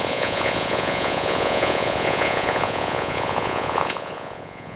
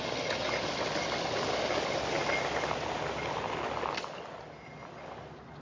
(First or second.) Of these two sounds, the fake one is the first